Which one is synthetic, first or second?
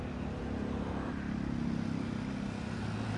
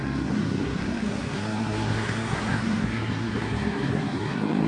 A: second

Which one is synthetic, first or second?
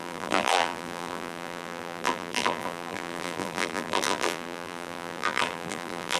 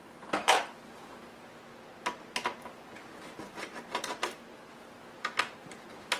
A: first